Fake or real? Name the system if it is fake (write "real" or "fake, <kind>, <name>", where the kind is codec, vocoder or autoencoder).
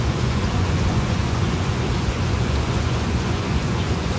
fake, vocoder, Vocos